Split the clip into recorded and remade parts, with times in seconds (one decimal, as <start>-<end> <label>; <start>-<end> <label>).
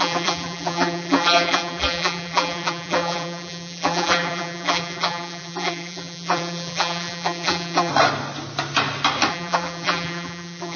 0.0-7.9 remade; 7.9-9.3 recorded; 9.3-10.8 remade